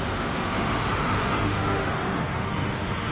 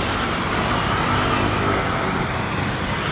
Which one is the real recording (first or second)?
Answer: second